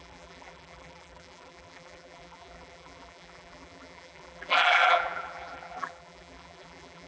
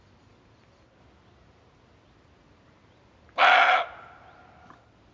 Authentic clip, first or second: second